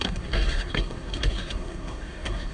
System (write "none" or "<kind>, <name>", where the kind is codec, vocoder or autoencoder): codec, SNAC